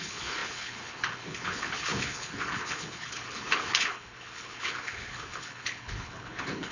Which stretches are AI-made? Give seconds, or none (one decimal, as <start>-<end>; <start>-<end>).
0.0-6.7

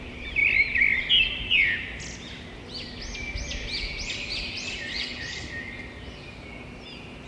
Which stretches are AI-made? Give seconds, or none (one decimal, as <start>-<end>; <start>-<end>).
4.9-5.5

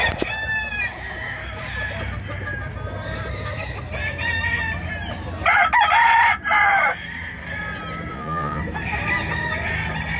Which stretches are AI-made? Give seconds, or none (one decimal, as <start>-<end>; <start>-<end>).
8.1-8.6

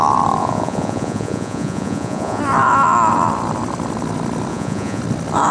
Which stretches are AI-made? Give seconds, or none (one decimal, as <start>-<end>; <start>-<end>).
0.4-2.4; 4.5-5.0